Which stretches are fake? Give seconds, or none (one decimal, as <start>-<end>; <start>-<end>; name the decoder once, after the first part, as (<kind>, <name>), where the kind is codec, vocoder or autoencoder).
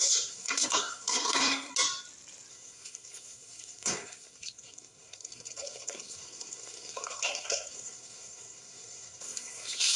0.0-1.7 (codec, SNAC); 2.5-10.0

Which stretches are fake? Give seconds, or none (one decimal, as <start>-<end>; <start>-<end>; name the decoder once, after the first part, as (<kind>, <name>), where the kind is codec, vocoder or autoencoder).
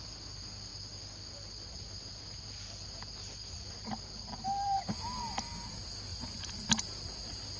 none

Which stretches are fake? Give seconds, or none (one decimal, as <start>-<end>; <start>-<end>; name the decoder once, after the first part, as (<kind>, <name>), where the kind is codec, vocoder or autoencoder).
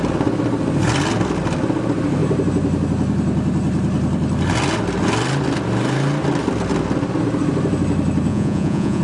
8.3-9.0 (vocoder, Vocos)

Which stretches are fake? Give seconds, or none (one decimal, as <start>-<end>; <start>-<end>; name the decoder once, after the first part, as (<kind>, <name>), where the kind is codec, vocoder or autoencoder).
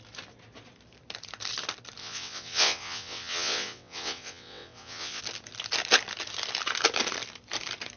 2.0-5.2 (vocoder, WaveNeXt)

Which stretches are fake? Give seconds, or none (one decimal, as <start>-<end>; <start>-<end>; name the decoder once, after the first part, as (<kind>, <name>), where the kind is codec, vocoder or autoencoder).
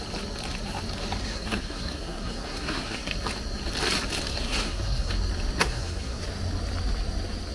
1.2-3.1 (codec, SNAC); 4.3-5.1; 5.6-6.2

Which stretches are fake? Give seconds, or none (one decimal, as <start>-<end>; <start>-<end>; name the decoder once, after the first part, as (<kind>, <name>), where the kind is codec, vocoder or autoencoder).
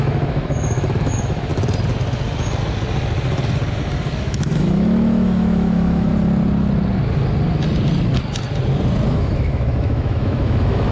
0.0-1.5 (autoencoder, DAC-VAE); 4.2-6.1; 9.1-10.9